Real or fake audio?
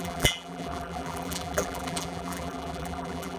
fake